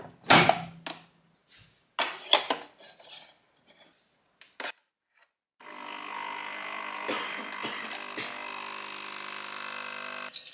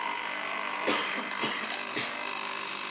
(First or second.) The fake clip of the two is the second